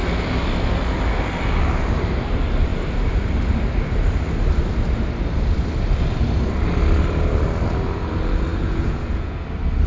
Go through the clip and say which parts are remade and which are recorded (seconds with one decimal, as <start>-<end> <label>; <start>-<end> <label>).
0.0-8.5 recorded; 8.5-9.4 remade; 9.4-9.9 recorded